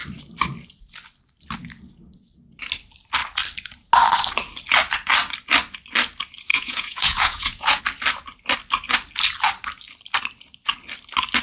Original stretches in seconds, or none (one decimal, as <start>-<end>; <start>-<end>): 0.0-6.5; 7.8-11.4